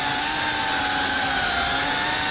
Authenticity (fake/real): real